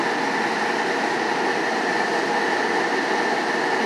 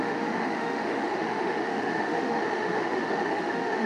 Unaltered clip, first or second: first